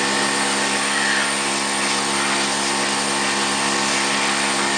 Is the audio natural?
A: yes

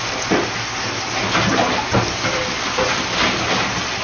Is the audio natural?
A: yes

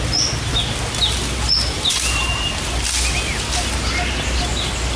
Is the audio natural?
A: yes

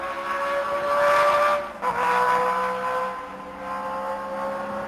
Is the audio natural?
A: yes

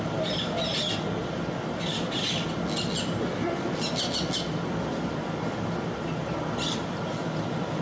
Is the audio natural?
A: yes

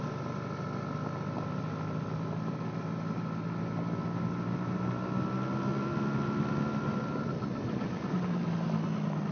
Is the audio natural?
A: yes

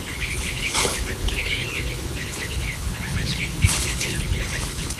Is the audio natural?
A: no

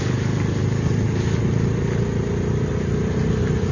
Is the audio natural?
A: yes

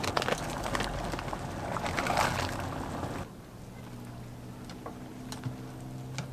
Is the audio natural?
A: yes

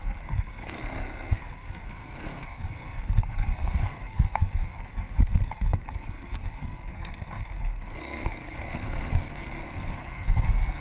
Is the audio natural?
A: no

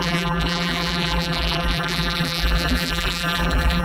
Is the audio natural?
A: no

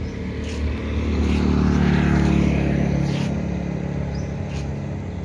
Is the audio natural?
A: yes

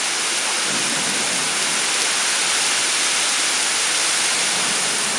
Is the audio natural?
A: yes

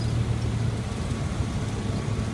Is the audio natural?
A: yes